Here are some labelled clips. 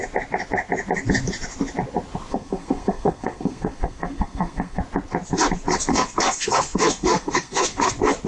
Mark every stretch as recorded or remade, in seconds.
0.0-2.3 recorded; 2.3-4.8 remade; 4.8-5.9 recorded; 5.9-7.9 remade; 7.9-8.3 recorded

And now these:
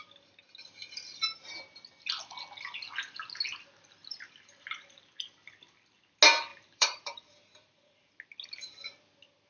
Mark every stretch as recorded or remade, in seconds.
0.0-4.0 recorded; 4.0-5.0 remade; 5.0-6.5 recorded; 6.5-8.1 remade; 8.1-9.5 recorded

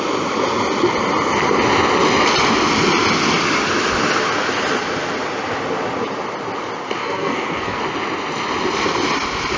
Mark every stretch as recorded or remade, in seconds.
0.0-7.0 recorded; 7.0-7.8 remade; 7.8-9.6 recorded

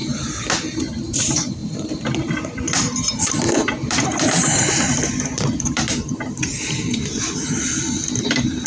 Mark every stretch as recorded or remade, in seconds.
0.0-1.2 recorded; 1.2-8.7 remade

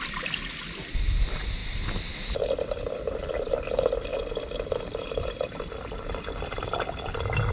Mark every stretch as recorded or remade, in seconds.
0.0-7.5 recorded

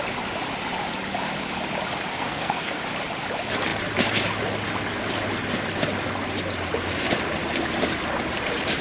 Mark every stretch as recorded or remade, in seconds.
0.0-2.1 recorded; 2.1-2.8 remade; 2.8-8.8 recorded

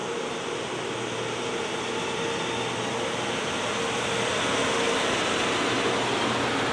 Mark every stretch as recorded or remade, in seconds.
0.0-6.7 recorded